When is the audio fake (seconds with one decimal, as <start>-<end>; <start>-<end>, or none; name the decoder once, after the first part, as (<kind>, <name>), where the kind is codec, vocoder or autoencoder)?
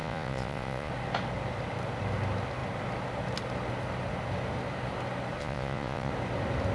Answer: 0.0-0.9 (vocoder, Vocos); 5.4-6.1